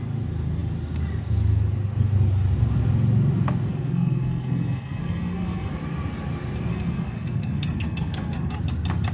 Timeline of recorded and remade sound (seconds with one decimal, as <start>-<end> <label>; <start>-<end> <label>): 0.0-3.7 recorded; 3.7-5.7 remade; 5.7-6.7 recorded; 6.7-8.6 remade; 8.6-9.1 recorded